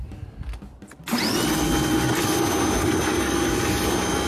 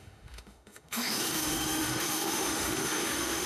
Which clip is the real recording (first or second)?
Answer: first